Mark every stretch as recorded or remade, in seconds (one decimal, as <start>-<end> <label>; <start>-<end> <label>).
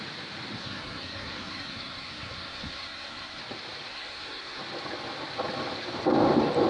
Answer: 0.0-0.6 recorded; 0.6-3.4 remade; 3.4-3.9 recorded; 3.9-4.6 remade; 4.6-6.7 recorded